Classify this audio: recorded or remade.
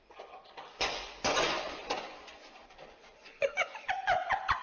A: remade